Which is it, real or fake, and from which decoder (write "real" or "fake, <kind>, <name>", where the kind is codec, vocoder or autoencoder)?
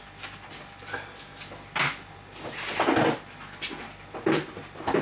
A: real